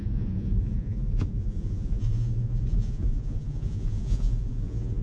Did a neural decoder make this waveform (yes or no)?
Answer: yes